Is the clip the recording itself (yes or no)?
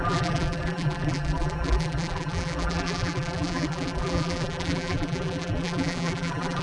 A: no